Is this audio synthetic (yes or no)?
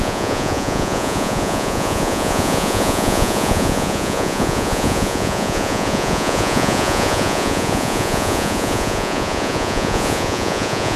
yes